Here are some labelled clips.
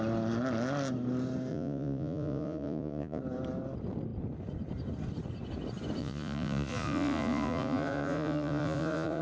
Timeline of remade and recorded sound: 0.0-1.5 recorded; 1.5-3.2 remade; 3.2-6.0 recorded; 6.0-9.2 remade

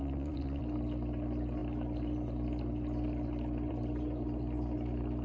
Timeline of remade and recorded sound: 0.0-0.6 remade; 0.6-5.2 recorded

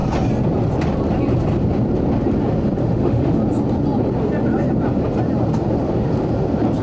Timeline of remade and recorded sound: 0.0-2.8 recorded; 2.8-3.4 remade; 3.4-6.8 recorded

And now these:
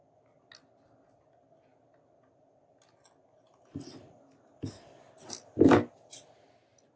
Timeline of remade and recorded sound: 0.0-7.0 recorded

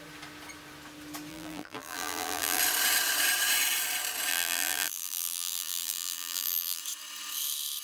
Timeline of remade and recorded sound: 0.0-1.3 recorded; 1.3-2.6 remade; 2.6-4.3 recorded; 4.3-6.8 remade; 6.8-7.8 recorded